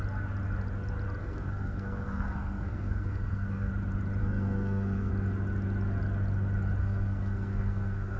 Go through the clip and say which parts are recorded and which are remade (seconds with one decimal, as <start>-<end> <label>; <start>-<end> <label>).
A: 0.0-1.2 recorded; 1.2-3.7 remade; 3.7-4.2 recorded; 4.2-5.1 remade; 5.1-6.8 recorded; 6.8-8.2 remade